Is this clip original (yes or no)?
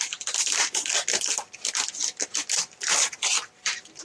yes